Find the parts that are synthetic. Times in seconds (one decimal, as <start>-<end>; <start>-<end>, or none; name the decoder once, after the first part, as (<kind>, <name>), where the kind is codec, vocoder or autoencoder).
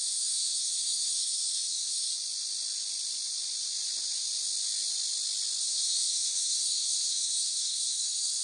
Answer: 0.0-2.1 (codec, SNAC); 5.6-8.4